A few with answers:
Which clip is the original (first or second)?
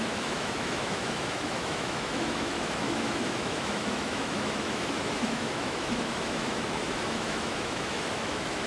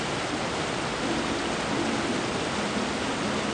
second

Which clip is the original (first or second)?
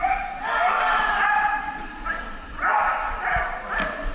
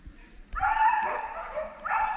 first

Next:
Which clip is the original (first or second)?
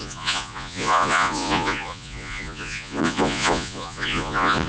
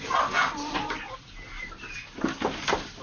second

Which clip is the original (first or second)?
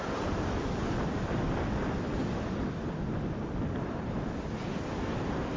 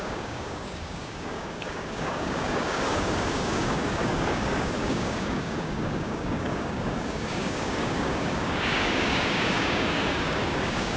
first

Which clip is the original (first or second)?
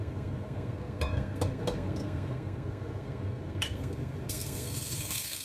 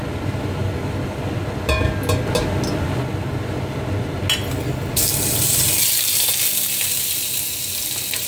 second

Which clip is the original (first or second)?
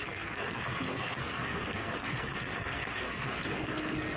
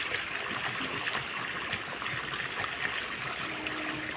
second